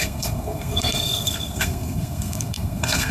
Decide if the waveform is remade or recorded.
remade